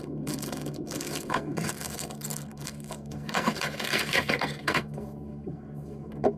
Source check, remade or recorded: remade